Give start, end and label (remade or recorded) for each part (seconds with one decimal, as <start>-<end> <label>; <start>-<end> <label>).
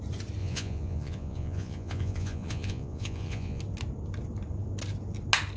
0.0-0.4 recorded; 0.4-3.6 remade; 3.6-5.6 recorded